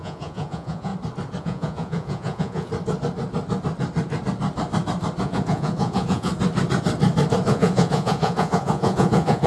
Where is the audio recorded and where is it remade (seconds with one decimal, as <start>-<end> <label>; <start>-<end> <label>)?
0.0-0.9 remade; 0.9-1.4 recorded; 1.4-2.7 remade; 2.7-5.2 recorded; 5.2-6.3 remade; 6.3-7.5 recorded; 7.5-9.5 remade